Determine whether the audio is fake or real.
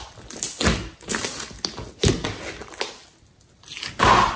real